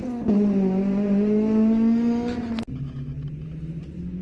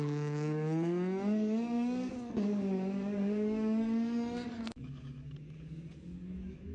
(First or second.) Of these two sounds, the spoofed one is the second